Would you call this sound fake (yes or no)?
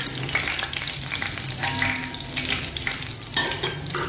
yes